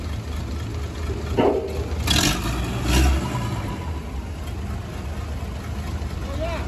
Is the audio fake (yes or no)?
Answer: no